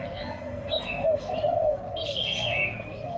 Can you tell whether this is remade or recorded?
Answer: remade